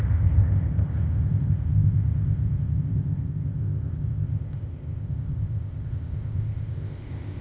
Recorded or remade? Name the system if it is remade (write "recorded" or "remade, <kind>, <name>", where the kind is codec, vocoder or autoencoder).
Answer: remade, codec, ZipCodec